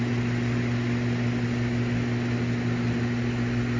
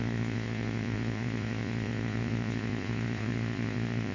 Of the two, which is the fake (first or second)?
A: second